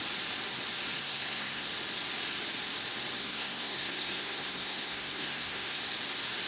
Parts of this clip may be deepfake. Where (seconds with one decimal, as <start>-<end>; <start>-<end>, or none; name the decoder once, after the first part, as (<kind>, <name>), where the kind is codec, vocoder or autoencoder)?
1.0-1.7 (codec, SNAC); 3.2-5.8